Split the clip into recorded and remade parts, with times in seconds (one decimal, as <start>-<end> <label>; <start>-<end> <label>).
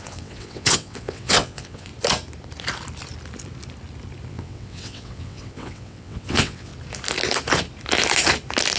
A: 0.0-1.9 remade; 1.9-4.3 recorded; 4.3-6.7 remade; 6.7-8.8 recorded